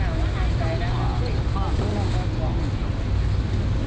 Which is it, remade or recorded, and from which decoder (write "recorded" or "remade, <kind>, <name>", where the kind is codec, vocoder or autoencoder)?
recorded